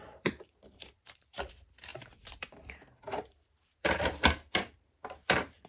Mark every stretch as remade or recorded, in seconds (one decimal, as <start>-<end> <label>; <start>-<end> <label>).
0.0-1.9 remade; 1.9-2.4 recorded; 2.4-5.7 remade